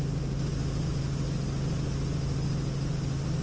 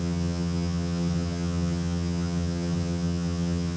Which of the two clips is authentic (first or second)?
first